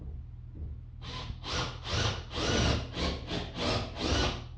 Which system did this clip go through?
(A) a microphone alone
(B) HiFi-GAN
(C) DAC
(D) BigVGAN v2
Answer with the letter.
A